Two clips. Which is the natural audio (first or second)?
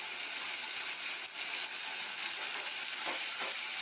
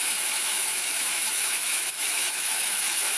first